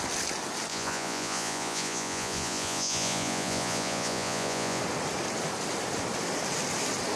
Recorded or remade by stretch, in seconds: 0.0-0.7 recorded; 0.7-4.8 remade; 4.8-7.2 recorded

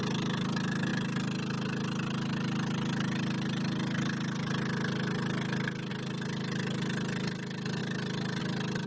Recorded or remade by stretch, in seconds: 0.0-8.9 recorded